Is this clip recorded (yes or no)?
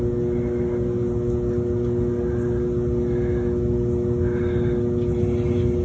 yes